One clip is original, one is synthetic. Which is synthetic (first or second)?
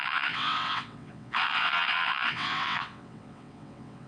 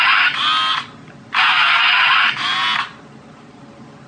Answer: first